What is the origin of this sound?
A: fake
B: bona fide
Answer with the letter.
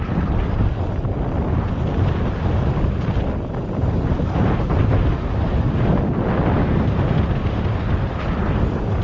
B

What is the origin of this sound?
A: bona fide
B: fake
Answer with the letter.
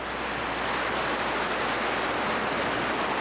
A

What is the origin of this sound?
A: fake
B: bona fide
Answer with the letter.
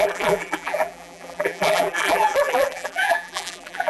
A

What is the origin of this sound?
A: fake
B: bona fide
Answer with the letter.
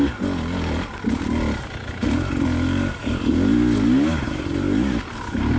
B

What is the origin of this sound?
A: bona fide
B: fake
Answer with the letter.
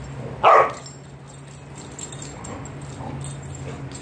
A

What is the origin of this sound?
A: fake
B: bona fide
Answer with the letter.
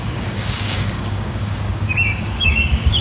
A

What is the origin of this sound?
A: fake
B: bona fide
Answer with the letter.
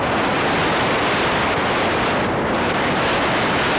B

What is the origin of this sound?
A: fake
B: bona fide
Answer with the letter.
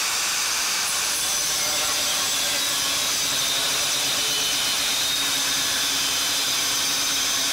A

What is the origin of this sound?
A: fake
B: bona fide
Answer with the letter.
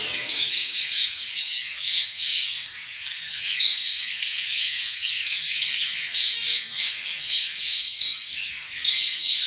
A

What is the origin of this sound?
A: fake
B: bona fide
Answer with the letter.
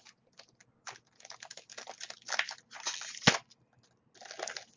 B